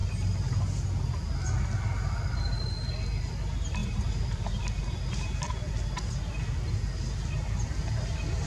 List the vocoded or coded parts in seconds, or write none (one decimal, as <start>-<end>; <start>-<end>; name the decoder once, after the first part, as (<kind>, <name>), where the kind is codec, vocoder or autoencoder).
3.8-6.2 (vocoder, BigVGAN v2)